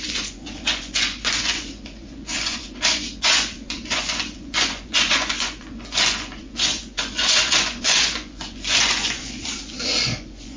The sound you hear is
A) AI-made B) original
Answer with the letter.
A